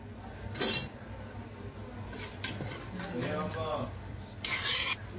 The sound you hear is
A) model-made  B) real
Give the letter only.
B